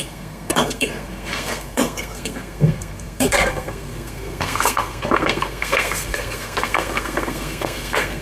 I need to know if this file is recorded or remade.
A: remade